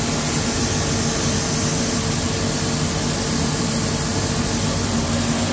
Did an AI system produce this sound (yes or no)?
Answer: no